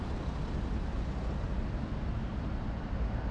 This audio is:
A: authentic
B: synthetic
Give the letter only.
A